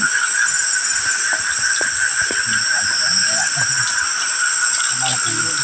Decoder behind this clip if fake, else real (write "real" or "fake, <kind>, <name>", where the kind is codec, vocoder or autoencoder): real